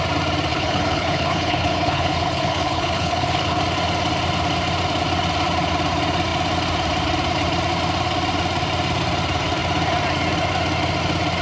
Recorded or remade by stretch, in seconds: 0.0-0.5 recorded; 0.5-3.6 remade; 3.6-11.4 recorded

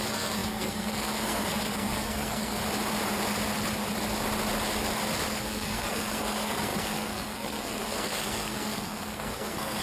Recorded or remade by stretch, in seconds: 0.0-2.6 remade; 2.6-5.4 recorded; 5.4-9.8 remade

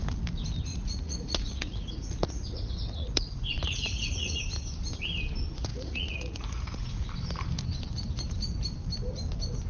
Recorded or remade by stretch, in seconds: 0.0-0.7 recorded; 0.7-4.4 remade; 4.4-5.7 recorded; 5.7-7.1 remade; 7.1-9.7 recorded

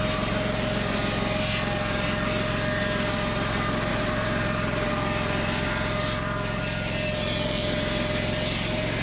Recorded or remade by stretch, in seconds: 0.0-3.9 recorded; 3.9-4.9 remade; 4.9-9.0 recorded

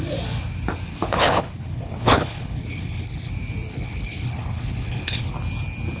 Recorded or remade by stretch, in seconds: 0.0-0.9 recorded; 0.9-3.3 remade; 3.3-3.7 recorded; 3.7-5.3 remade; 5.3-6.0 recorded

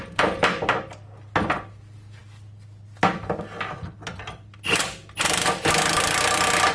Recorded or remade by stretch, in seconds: 0.0-6.7 recorded

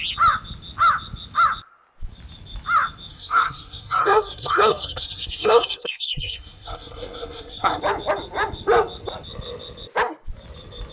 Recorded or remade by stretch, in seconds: 0.0-3.1 recorded; 3.1-7.8 remade; 7.8-10.9 recorded